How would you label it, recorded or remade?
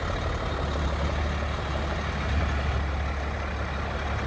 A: recorded